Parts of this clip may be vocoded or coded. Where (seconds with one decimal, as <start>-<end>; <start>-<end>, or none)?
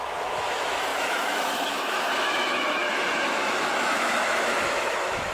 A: 0.0-5.3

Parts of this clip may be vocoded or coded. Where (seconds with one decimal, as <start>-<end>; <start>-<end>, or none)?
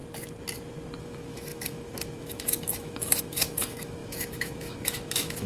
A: 1.0-5.5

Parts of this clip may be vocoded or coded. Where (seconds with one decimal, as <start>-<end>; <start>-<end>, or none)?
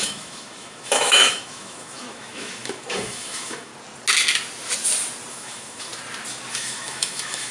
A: 0.0-3.7; 5.3-5.9; 6.5-7.5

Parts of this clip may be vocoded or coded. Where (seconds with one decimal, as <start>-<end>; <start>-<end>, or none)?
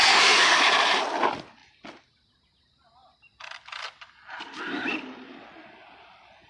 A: 0.0-0.6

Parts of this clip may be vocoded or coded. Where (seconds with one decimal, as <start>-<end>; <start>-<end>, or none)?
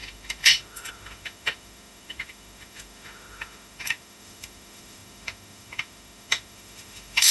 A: 0.0-7.3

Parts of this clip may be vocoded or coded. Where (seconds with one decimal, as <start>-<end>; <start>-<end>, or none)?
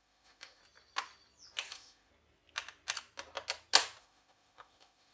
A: 0.0-0.6; 1.7-2.1; 4.0-5.1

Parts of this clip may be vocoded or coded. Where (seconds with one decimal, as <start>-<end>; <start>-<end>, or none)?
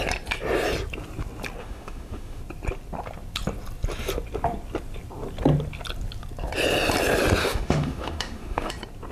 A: 1.6-2.4; 7.4-8.7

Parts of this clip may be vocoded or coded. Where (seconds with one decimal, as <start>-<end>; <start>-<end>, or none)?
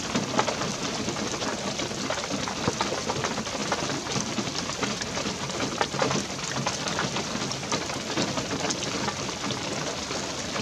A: none